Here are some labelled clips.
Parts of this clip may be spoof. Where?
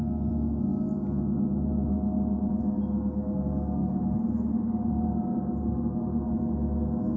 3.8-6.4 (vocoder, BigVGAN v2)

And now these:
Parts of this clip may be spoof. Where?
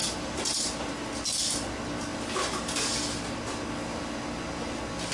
0.0-0.9 (vocoder, BigVGAN v2)